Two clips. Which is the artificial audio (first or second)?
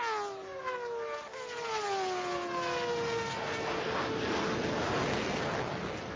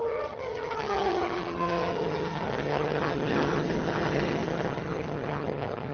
second